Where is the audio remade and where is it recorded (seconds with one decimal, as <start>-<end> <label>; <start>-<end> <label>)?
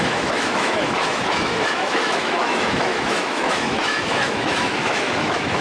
0.0-5.6 remade